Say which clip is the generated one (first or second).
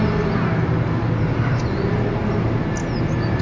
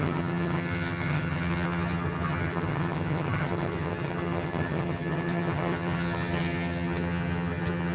second